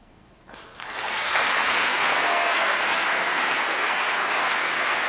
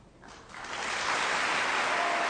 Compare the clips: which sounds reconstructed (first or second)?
first